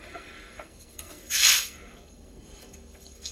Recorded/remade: remade